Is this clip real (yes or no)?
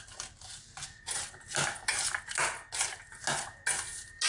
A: yes